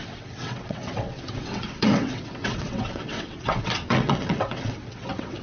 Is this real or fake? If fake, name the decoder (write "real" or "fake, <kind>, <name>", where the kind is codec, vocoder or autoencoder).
fake, vocoder, WaveNeXt